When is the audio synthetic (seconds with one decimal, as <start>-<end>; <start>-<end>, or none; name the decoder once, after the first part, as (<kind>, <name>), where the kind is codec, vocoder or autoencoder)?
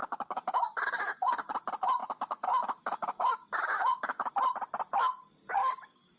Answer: 0.0-1.5 (codec, DAC); 2.0-4.3; 5.6-6.2